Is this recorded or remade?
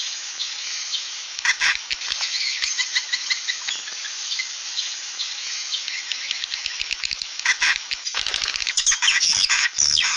remade